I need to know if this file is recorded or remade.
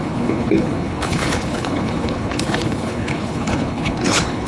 remade